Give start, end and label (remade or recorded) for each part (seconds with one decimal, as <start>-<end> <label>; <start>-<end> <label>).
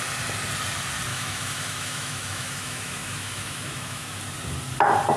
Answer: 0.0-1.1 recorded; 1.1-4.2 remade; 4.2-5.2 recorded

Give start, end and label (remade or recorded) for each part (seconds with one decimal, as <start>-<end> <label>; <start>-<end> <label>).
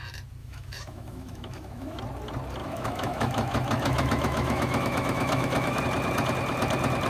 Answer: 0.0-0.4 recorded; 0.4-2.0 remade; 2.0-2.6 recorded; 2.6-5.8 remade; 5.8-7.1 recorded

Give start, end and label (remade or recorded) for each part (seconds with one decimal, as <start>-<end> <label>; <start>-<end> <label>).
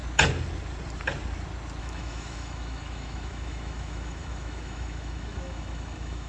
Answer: 0.0-1.8 recorded; 1.8-6.3 remade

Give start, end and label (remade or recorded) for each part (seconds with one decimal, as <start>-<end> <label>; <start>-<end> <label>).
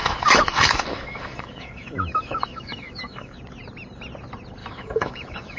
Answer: 0.0-3.4 remade; 3.4-4.6 recorded; 4.6-5.6 remade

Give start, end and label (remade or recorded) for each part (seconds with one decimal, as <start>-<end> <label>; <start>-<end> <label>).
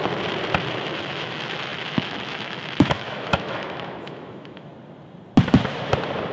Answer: 0.0-0.7 recorded; 0.7-4.7 remade; 4.7-6.3 recorded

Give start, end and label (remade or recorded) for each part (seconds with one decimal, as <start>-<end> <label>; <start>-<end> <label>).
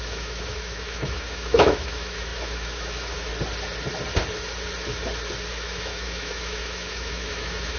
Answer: 0.0-3.3 remade; 3.3-5.5 recorded; 5.5-7.8 remade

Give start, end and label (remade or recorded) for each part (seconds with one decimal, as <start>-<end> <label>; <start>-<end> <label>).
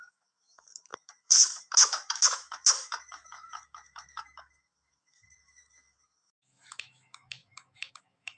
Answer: 0.0-8.4 remade